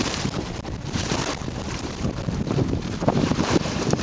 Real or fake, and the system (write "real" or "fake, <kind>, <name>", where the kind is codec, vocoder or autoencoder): fake, vocoder, BigVGAN v2